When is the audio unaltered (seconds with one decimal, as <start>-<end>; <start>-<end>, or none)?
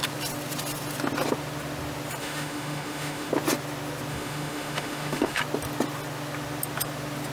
0.0-2.2; 3.3-4.1; 5.4-7.3